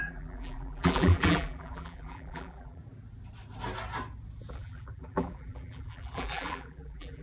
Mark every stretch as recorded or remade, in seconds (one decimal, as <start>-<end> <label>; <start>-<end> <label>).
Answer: 0.0-2.8 remade; 2.8-4.5 recorded; 4.5-7.2 remade